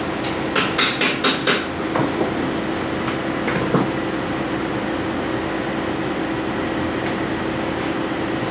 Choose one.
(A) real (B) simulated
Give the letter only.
A